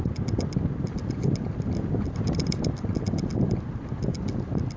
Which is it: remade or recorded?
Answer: recorded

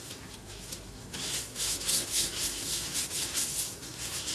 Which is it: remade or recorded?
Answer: remade